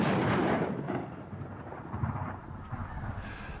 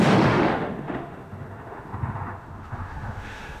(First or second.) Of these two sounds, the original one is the first